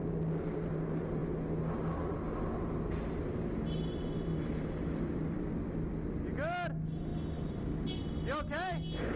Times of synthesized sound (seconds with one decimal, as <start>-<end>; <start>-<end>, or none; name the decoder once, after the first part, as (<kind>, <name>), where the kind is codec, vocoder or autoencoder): none